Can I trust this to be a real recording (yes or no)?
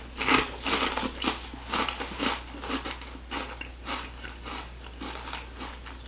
yes